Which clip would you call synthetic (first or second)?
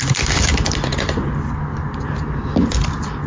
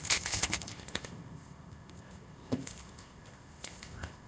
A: second